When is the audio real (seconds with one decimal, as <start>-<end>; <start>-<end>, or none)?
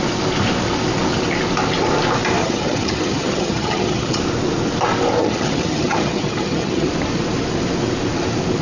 0.0-2.4; 4.2-5.2; 6.9-8.6